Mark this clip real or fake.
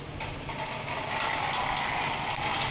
real